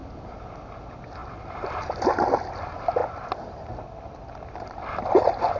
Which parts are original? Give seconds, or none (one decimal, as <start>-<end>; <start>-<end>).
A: 0.0-5.6